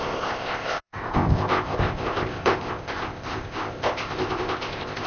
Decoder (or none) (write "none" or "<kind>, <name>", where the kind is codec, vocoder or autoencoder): codec, ZipCodec